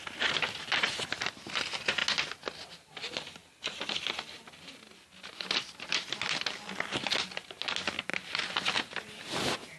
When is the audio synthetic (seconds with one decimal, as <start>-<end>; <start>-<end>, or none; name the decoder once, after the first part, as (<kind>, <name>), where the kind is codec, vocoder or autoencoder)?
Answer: none